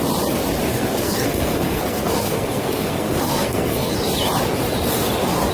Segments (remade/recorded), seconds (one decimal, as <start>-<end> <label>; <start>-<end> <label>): 0.0-0.7 recorded; 0.7-3.9 remade; 3.9-5.5 recorded